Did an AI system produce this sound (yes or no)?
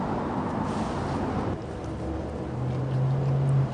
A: no